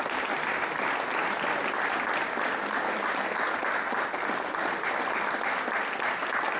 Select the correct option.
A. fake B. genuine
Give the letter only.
B